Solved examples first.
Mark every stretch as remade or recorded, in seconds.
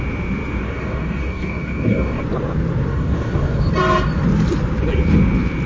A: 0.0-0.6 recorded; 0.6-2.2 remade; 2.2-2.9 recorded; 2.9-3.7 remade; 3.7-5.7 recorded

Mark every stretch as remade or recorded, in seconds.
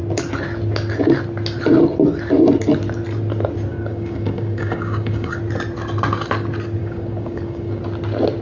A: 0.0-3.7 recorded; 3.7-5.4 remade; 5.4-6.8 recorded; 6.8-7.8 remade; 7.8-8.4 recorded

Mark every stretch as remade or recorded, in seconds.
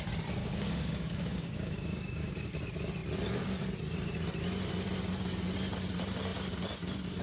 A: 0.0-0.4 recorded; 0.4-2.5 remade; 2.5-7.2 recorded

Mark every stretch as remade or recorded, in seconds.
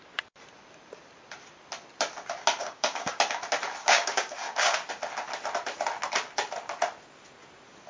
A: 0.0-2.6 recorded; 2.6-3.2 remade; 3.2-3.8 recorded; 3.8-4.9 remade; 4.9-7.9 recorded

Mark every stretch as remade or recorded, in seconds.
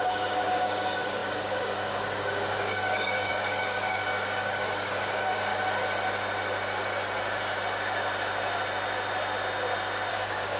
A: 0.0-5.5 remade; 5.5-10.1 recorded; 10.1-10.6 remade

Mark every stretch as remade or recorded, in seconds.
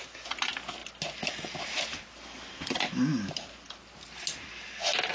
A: 0.0-5.1 recorded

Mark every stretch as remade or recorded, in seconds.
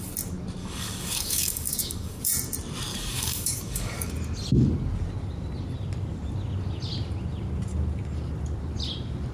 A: 0.0-0.6 recorded; 0.6-2.2 remade; 2.2-2.9 recorded; 2.9-4.1 remade; 4.1-9.3 recorded